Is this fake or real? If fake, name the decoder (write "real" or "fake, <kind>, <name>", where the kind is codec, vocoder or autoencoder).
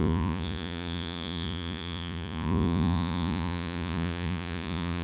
fake, vocoder, Vocos